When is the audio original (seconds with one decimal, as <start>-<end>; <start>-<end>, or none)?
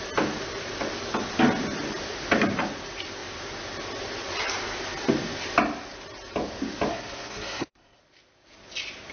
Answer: 0.0-6.9; 8.0-9.1